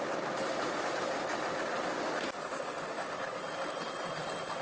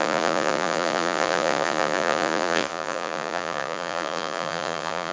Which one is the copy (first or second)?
second